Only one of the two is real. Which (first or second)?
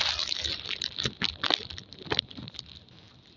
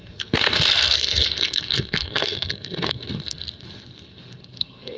first